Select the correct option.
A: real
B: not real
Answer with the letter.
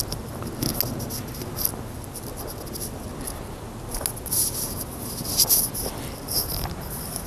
A